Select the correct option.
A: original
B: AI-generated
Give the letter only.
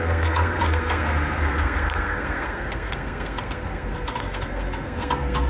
B